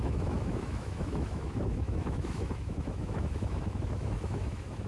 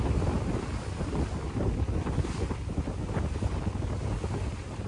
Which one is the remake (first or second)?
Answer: first